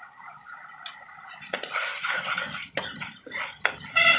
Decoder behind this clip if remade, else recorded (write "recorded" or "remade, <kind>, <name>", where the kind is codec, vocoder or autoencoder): recorded